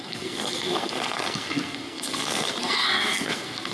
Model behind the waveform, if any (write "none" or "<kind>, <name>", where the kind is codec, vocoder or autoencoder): codec, SNAC